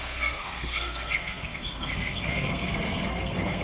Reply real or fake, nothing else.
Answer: fake